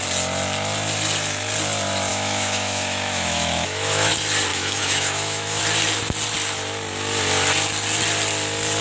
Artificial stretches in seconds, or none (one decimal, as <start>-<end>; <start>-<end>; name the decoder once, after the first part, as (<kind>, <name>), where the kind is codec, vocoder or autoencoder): 2.1-4.1 (autoencoder, DAC-VAE); 4.5-5.6